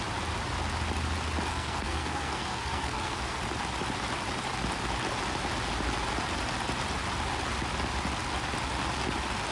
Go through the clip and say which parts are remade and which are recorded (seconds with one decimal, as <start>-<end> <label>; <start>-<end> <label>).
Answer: 0.0-1.5 recorded; 1.5-3.4 remade; 3.4-9.5 recorded